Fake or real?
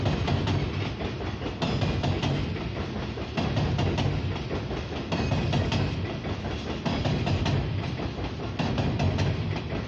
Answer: real